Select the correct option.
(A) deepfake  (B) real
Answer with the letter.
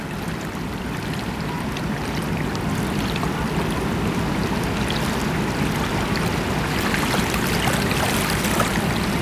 B